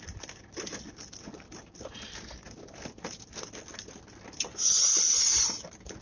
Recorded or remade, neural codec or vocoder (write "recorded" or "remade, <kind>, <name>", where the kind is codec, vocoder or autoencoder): recorded